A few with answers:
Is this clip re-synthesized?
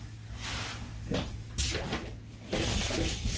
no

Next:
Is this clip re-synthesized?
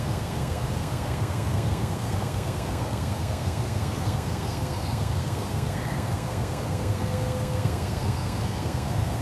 yes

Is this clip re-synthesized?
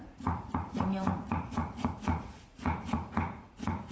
yes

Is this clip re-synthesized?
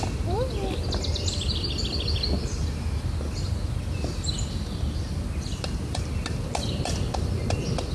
no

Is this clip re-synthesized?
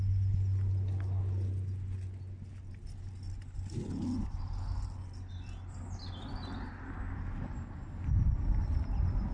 no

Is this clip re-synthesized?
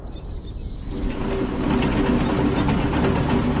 no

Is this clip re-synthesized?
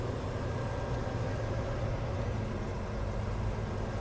no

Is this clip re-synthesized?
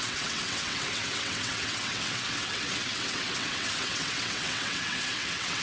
yes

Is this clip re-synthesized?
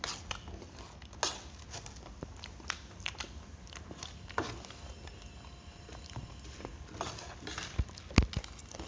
no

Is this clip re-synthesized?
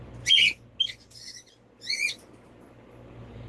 no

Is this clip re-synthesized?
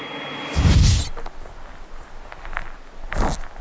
no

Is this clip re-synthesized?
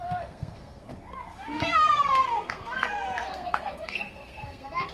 yes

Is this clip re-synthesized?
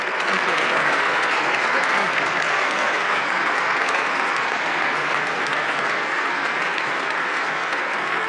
yes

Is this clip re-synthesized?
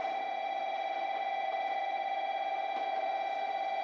no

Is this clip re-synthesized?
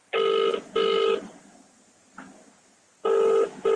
no